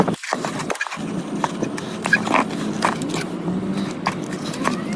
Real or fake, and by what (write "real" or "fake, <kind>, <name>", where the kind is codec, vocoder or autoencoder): real